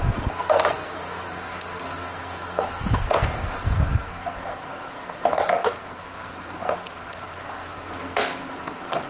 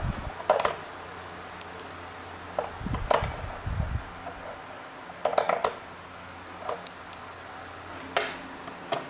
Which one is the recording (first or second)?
second